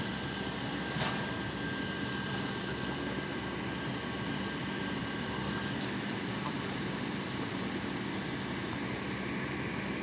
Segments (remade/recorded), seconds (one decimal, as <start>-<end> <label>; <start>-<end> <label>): 0.0-5.0 recorded; 5.0-7.8 remade; 7.8-10.0 recorded